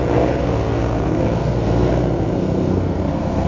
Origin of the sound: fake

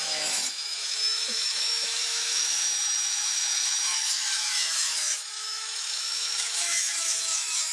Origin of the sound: fake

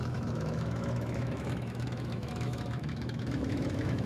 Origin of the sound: fake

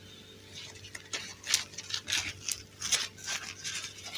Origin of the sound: real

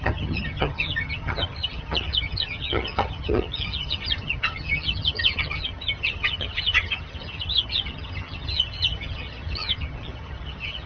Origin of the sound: fake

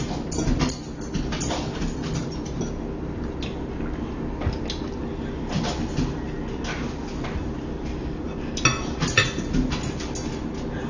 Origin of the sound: real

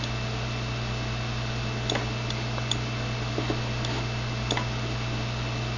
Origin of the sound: real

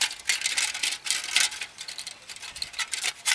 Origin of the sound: real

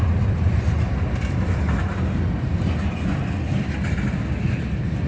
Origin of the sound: real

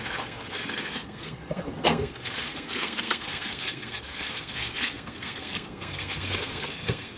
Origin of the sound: fake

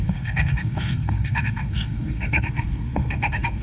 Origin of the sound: fake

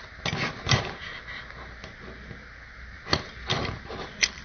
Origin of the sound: real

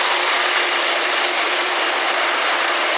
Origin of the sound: fake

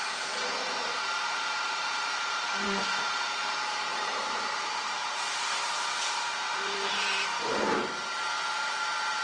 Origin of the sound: fake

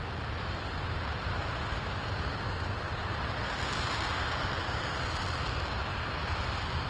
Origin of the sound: real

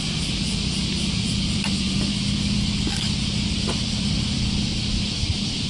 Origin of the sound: fake